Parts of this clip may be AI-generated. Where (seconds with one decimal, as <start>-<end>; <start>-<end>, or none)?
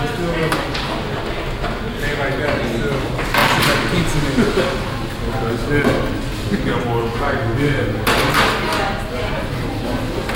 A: none